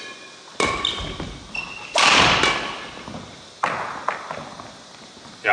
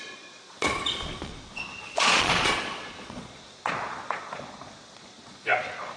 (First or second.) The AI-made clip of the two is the second